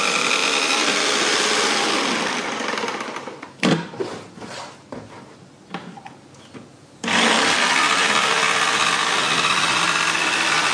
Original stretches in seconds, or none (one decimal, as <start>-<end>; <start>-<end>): 0.0-10.7